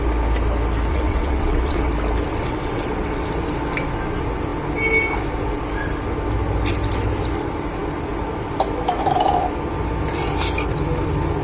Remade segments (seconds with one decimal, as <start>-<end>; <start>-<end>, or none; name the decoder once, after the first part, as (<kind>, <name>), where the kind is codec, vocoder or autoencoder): 0.9-1.9 (vocoder, WaveNeXt); 2.3-3.3